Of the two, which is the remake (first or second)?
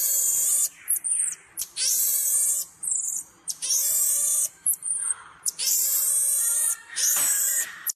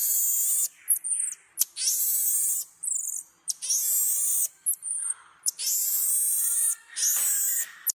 first